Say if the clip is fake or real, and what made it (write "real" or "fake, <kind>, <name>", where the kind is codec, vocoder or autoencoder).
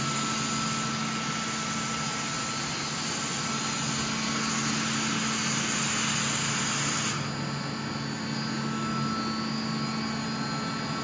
real